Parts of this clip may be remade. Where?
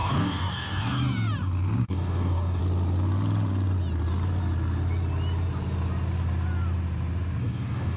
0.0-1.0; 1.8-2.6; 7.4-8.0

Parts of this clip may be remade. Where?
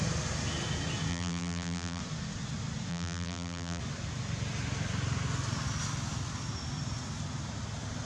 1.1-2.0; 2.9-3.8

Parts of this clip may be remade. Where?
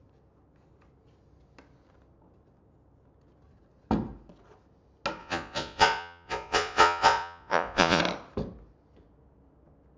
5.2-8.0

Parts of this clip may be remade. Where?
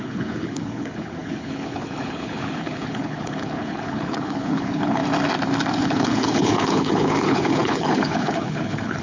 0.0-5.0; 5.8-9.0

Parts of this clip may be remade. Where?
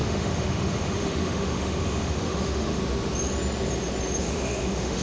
0.0-2.8; 4.2-5.0